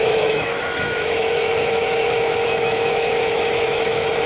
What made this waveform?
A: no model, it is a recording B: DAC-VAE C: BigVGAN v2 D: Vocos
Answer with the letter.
B